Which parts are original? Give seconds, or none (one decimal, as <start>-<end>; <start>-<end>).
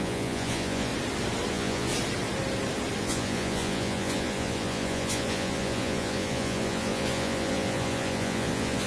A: 0.9-1.5; 1.9-3.0